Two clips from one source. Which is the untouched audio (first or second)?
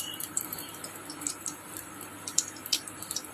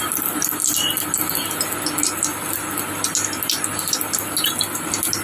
second